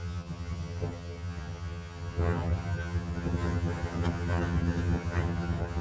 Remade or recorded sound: remade